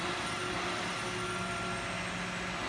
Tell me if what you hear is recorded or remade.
recorded